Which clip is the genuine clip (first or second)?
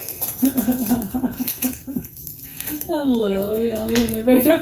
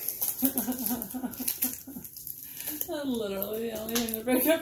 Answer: second